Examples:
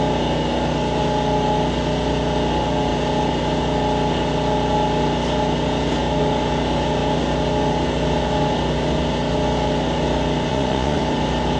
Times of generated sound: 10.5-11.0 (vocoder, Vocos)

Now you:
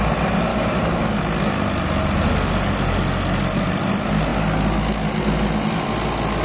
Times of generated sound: 0.5-1.2 (codec, DAC)

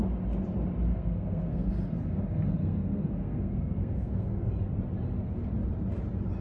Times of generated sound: 0.9-1.7 (codec, SNAC); 2.6-4.5